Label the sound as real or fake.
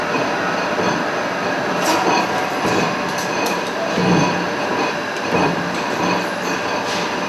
real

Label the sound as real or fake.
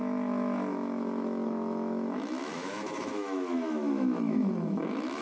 fake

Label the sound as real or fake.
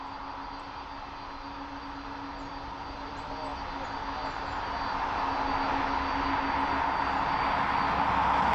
real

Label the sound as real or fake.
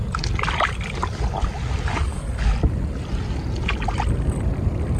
real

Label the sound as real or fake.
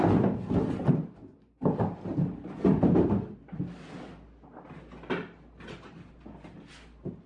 real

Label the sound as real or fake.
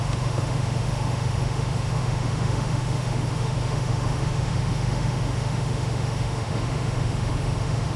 fake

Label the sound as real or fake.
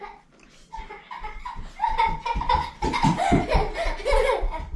real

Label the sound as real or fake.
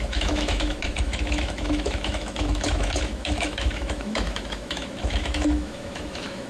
fake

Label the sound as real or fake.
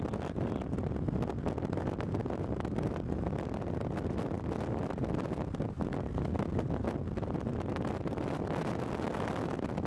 real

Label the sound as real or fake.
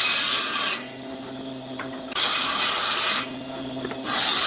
real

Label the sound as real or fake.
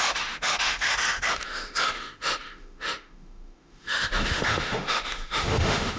fake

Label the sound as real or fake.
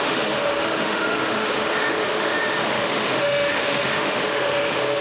fake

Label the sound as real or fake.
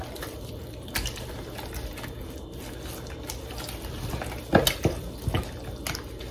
real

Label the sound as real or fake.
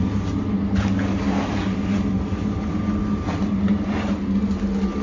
real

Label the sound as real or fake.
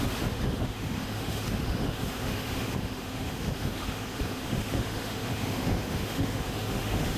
fake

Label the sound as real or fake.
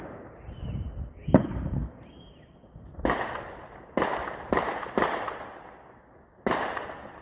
real